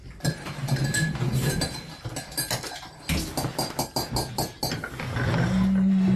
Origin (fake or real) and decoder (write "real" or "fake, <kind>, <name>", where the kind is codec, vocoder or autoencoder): real